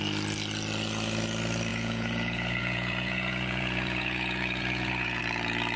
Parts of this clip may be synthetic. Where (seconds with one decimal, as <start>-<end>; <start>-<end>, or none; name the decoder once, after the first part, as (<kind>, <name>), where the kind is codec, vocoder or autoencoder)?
1.7-5.2 (vocoder, Vocos)